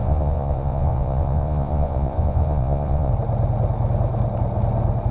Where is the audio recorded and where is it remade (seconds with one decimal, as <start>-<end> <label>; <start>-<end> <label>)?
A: 0.0-3.1 remade; 3.1-5.1 recorded